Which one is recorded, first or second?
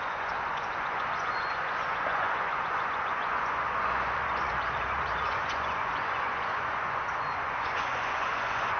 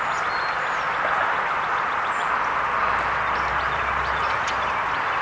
second